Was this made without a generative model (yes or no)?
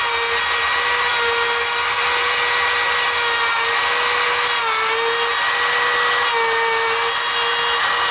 yes